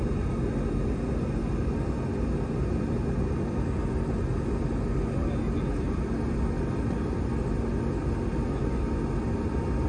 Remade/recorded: recorded